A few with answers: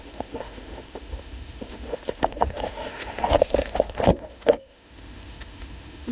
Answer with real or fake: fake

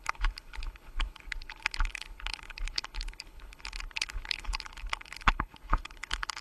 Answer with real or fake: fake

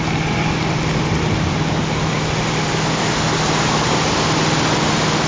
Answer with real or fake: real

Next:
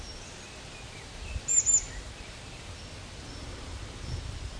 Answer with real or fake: real